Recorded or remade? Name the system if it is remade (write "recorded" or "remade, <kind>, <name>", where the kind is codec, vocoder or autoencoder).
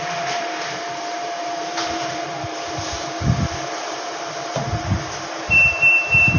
remade, vocoder, BigVGAN v2